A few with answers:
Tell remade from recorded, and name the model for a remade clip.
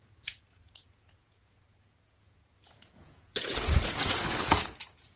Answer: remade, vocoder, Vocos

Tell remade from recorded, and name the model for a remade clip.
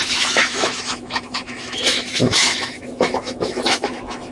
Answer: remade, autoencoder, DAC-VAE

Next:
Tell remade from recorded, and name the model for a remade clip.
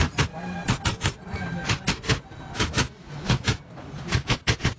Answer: recorded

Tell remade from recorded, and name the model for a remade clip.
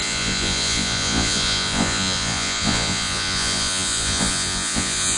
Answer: remade, vocoder, Vocos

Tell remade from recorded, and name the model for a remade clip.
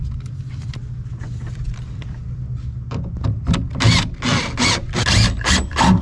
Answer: recorded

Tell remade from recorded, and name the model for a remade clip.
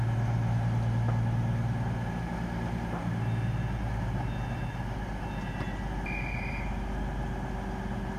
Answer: recorded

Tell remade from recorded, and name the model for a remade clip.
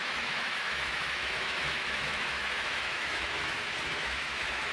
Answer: remade, autoencoder, DAC-VAE